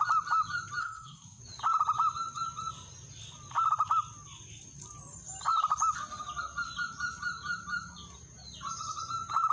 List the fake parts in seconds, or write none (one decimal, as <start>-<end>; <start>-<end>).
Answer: 0.8-1.4